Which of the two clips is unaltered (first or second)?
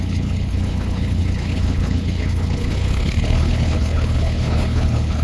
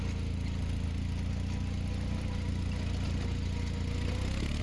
second